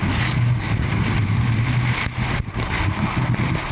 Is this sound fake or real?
real